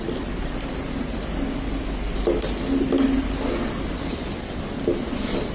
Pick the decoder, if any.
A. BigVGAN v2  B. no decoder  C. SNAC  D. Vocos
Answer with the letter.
B